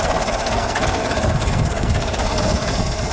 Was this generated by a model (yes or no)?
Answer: yes